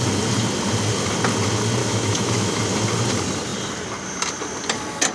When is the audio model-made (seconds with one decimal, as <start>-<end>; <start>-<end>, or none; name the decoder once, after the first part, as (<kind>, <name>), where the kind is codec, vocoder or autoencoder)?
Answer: 1.8-2.6 (autoencoder, DAC-VAE)